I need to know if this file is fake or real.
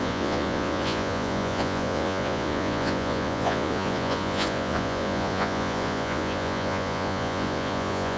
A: fake